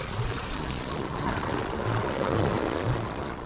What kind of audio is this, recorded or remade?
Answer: remade